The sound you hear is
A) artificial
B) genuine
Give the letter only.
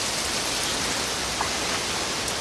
B